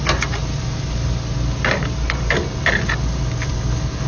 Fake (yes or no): no